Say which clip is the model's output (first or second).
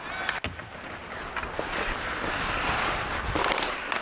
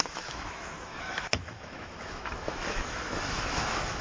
second